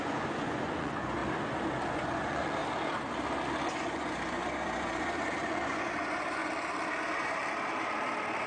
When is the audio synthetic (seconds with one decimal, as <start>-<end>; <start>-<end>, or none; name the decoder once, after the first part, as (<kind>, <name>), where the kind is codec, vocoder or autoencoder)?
0.0-1.2 (vocoder, Vocos); 1.9-2.6; 3.7-6.4; 7.0-7.4